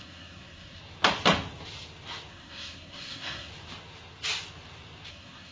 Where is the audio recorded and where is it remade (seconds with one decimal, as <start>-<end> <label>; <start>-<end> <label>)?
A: 0.0-0.8 remade; 0.8-2.3 recorded; 2.3-3.5 remade; 3.5-5.1 recorded; 5.1-5.5 remade